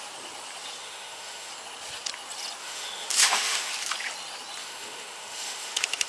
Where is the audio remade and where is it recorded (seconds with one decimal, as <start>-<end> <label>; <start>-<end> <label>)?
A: 0.0-0.8 recorded; 0.8-1.5 remade; 1.5-2.6 recorded; 2.6-3.7 remade; 3.7-4.6 recorded; 4.6-6.1 remade